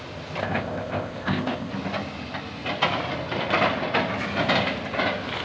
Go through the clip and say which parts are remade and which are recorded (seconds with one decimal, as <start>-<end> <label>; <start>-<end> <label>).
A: 0.0-0.4 recorded; 0.4-1.7 remade; 1.7-5.4 recorded